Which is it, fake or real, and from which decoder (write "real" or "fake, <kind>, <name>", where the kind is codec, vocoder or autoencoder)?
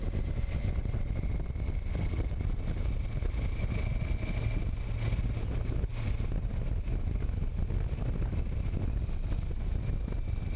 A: real